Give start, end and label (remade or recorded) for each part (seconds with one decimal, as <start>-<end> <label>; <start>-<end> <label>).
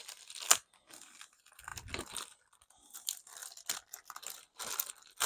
0.0-1.7 recorded; 1.7-2.4 remade; 2.4-5.3 recorded